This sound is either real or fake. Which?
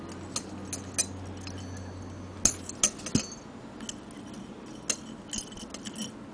real